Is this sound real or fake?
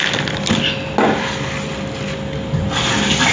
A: real